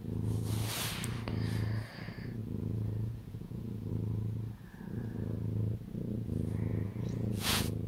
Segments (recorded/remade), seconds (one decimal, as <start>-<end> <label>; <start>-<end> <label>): 0.0-2.4 recorded; 2.4-3.9 remade; 3.9-6.7 recorded; 6.7-7.9 remade